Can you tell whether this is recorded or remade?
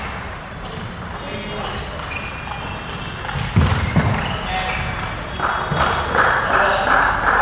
recorded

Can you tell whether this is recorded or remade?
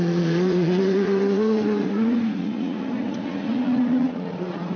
remade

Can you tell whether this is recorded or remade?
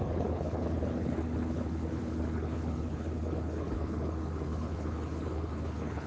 remade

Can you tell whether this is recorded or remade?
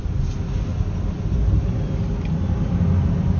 recorded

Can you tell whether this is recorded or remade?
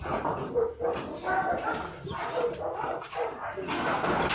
recorded